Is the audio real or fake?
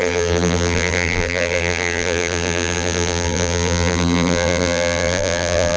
fake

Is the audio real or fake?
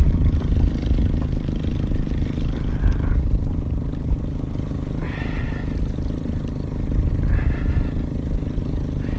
real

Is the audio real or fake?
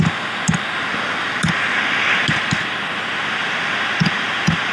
real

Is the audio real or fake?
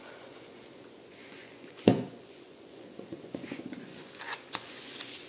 fake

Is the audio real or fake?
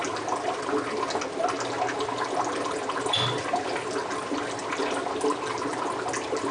real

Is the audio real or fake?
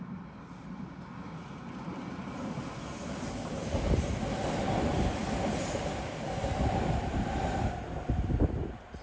real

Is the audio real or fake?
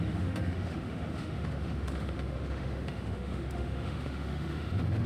fake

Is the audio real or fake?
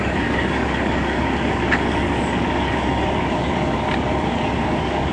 fake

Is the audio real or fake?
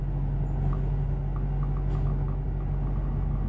real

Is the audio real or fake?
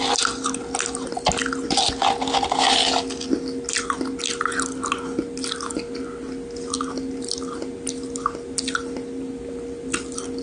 real